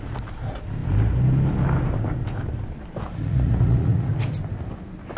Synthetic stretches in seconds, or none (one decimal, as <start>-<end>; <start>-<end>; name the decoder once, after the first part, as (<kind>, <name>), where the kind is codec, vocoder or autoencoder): 3.1-4.1 (vocoder, Vocos)